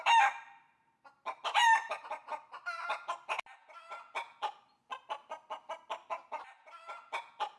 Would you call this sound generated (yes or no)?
no